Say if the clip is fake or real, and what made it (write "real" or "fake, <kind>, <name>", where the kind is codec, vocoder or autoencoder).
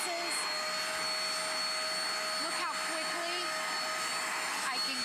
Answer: real